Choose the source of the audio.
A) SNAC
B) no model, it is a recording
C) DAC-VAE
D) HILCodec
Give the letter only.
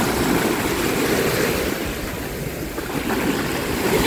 B